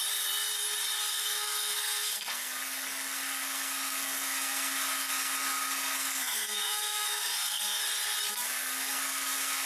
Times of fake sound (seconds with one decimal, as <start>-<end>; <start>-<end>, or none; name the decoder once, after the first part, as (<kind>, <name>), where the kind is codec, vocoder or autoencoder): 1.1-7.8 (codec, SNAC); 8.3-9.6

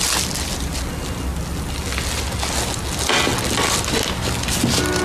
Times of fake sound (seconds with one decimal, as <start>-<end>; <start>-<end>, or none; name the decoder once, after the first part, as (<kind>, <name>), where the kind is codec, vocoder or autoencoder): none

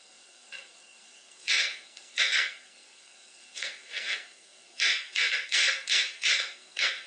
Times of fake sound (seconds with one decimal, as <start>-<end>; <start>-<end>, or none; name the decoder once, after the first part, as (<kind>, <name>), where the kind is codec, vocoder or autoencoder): 0.0-7.1 (codec, SNAC)

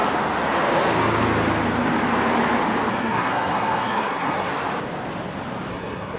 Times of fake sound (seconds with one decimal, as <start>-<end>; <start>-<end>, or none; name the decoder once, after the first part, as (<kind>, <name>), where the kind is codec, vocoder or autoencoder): 2.9-4.5 (codec, SNAC); 5.7-6.2